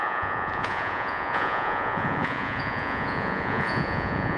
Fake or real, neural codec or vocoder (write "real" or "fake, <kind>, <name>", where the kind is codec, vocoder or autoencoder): fake, vocoder, Vocos